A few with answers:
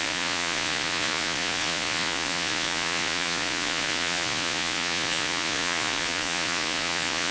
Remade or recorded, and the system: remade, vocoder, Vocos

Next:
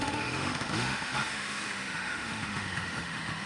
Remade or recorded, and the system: remade, autoencoder, DAC-VAE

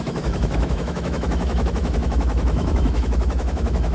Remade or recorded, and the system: remade, autoencoder, DAC-VAE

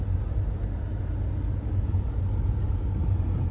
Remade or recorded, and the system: recorded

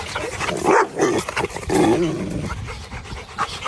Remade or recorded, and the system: recorded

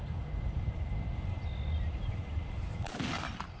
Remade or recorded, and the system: recorded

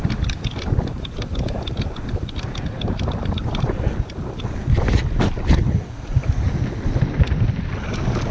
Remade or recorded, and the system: recorded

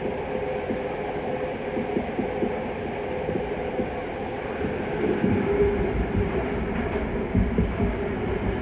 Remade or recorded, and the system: recorded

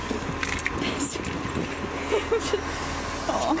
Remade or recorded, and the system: recorded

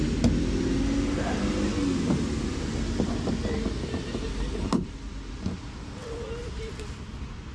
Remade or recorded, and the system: recorded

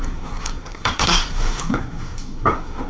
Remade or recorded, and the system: remade, codec, SNAC